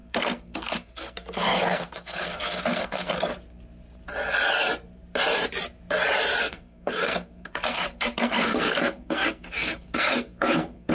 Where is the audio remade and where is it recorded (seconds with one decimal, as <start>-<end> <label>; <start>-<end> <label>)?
0.0-3.3 remade; 3.3-6.4 recorded; 6.4-10.9 remade

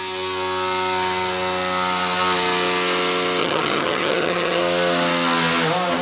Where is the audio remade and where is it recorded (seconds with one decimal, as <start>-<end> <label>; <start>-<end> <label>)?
0.0-3.4 recorded; 3.4-4.6 remade; 4.6-6.0 recorded